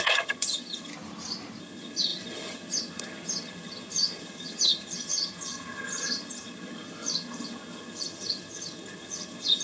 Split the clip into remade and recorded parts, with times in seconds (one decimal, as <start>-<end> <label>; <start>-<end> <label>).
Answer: 0.0-0.9 remade; 0.9-1.6 recorded; 1.6-9.6 remade